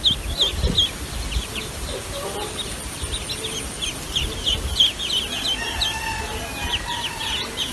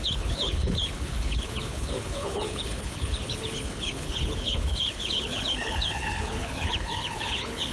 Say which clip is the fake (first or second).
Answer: second